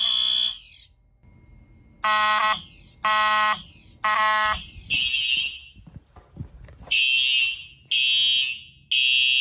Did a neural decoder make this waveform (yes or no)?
no